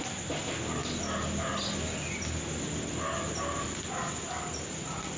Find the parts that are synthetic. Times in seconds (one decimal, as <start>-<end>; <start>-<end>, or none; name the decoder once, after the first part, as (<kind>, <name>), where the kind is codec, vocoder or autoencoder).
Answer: none